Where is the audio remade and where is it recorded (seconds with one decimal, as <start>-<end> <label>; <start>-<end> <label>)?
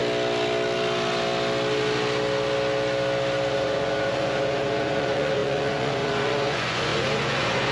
0.0-3.5 recorded; 3.5-7.7 remade